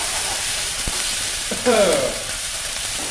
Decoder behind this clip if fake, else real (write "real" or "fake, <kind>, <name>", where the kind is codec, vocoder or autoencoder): fake, vocoder, BigVGAN v2